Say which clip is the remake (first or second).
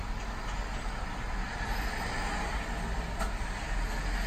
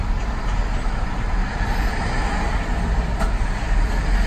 second